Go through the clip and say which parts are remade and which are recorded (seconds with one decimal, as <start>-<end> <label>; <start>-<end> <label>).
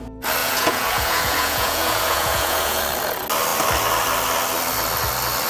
0.0-0.4 recorded; 0.4-2.8 remade; 2.8-5.5 recorded